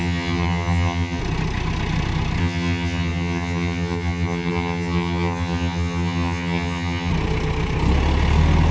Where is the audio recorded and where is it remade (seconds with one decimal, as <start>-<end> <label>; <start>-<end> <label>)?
0.0-1.2 remade; 1.2-2.4 recorded; 2.4-7.1 remade; 7.1-8.7 recorded